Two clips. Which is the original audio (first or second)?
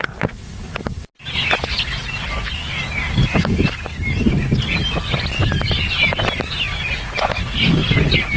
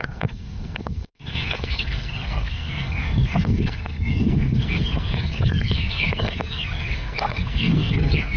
first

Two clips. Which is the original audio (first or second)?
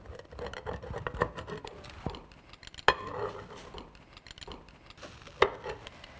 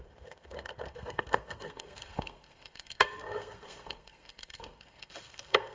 first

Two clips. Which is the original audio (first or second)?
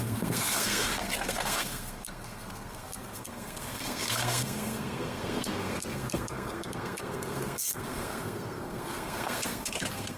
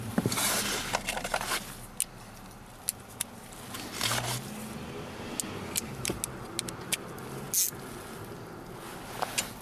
second